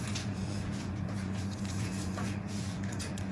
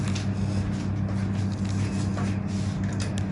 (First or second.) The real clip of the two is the second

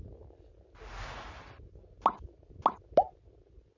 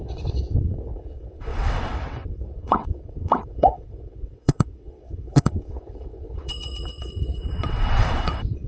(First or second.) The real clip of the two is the first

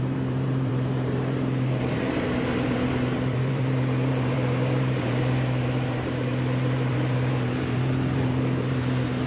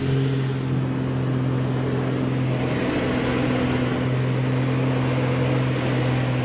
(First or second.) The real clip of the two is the second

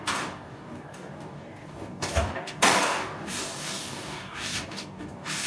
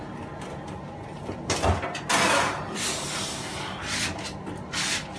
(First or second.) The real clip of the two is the second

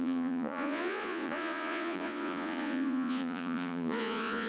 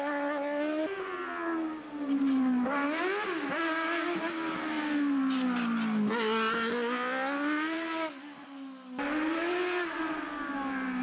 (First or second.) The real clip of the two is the second